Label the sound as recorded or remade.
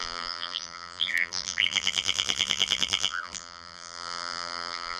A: remade